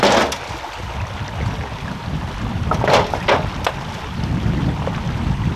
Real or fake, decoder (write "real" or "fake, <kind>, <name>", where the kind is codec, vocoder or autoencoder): real